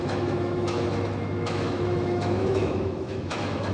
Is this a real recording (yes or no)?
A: no